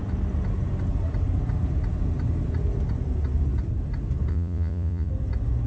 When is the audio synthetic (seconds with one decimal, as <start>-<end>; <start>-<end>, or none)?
4.3-5.1